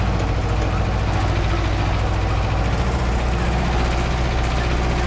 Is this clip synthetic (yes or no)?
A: no